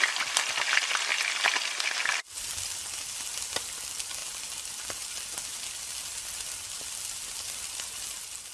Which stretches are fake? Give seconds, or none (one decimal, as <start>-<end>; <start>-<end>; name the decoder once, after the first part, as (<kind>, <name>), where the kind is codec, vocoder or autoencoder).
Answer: none